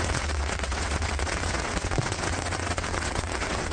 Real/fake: fake